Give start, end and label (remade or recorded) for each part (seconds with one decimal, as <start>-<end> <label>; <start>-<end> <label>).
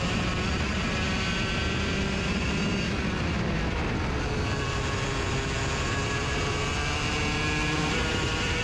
0.0-7.6 recorded; 7.6-8.6 remade